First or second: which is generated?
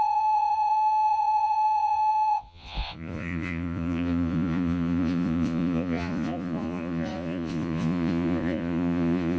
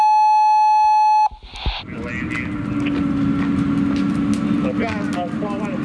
first